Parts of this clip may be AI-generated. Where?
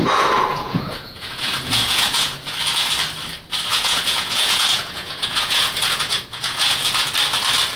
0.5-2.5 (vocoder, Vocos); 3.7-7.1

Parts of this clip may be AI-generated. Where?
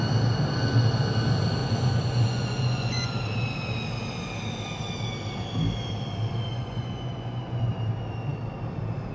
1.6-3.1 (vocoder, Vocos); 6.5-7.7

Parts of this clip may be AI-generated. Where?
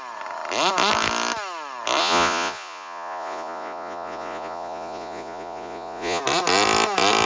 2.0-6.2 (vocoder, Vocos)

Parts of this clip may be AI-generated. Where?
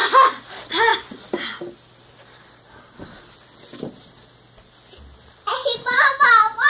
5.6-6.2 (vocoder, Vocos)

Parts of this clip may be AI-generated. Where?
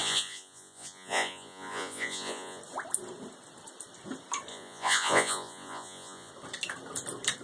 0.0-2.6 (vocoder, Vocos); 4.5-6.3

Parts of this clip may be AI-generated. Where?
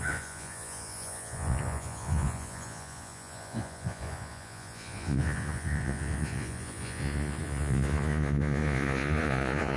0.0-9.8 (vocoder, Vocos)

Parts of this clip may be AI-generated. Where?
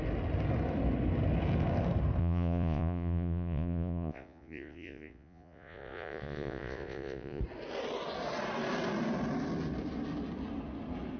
2.2-7.4 (vocoder, Vocos)